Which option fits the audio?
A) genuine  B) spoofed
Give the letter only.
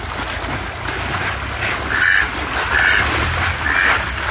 A